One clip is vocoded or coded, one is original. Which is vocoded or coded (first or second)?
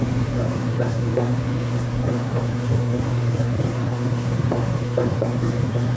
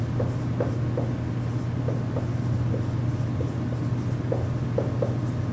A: first